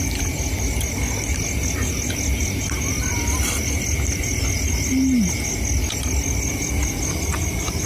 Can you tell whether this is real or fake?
real